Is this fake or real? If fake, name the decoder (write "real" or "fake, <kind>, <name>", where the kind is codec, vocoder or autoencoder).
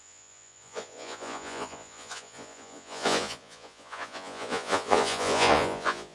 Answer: fake, vocoder, Vocos